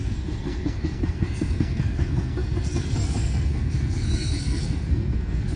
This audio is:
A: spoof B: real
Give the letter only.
A